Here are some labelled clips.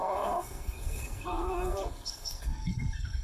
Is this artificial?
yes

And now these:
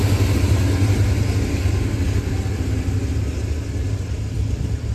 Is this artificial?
no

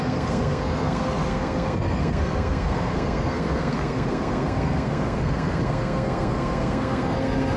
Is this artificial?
yes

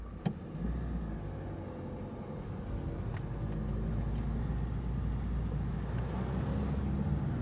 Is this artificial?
no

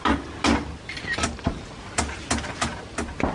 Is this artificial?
no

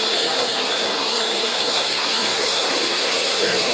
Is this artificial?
yes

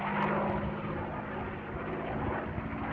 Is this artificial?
no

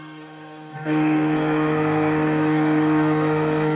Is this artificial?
yes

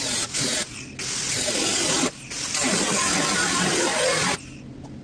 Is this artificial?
no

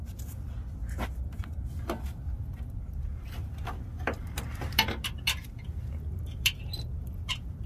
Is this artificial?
no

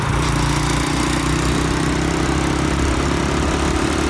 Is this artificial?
no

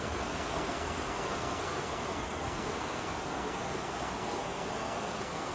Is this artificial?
yes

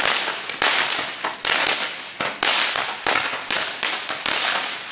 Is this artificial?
no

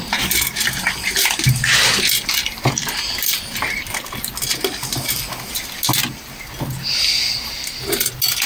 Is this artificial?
no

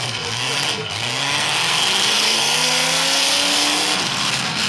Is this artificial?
yes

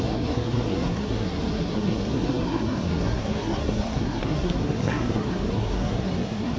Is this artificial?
yes